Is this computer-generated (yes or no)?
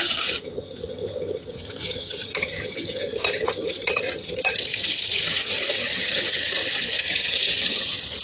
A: yes